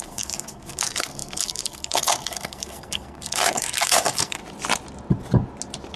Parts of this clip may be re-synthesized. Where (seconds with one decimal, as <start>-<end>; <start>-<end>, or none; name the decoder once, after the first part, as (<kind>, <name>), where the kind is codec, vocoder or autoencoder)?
0.0-4.4 (codec, SNAC)